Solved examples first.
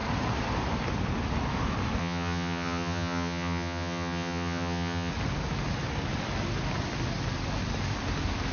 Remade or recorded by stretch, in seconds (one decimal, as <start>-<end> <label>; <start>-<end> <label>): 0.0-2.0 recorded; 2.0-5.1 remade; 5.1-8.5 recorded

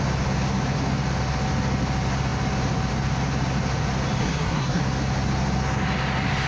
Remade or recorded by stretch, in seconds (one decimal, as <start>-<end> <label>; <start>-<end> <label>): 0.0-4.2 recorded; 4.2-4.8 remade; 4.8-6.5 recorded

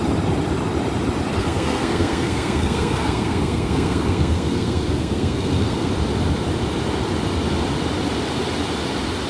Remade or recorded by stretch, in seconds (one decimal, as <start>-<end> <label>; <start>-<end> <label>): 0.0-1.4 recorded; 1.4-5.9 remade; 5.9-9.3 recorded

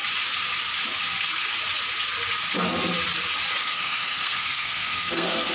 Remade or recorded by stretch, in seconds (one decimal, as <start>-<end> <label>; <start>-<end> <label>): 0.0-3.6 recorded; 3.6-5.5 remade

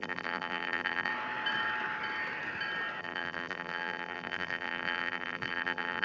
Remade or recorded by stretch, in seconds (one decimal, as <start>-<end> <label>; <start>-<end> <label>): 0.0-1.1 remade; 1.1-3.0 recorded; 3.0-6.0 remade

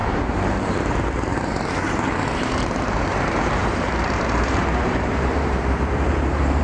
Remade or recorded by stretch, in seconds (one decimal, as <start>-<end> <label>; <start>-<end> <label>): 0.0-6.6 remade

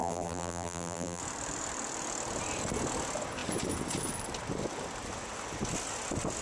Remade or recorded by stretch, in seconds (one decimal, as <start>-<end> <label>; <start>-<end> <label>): 0.0-1.2 remade; 1.2-6.4 recorded

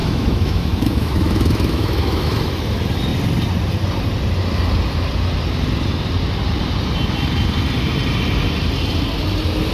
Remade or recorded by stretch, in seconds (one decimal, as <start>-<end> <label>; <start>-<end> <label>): 0.0-2.5 remade; 2.5-9.7 recorded